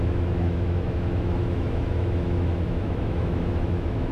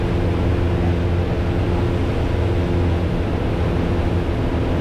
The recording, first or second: second